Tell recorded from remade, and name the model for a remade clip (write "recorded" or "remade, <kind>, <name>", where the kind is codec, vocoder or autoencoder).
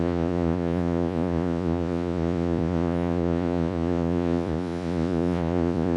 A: remade, vocoder, Vocos